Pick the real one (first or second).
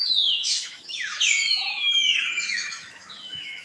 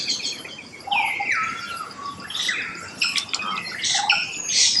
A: second